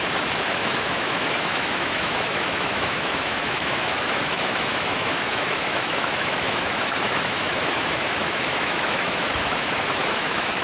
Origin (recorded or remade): remade